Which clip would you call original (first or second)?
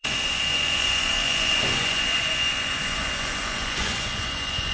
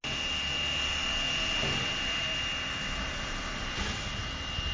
second